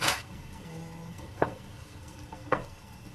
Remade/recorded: remade